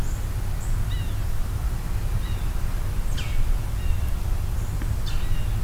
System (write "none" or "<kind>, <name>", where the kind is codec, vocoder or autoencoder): none